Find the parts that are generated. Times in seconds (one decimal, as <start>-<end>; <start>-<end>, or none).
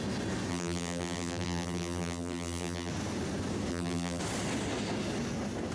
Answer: 0.5-2.9; 3.7-4.2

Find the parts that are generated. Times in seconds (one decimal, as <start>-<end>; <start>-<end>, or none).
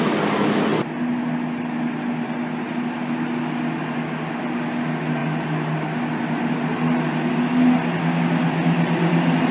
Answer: none